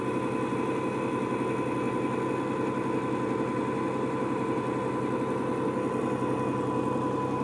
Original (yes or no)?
yes